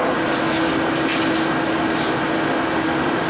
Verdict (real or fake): real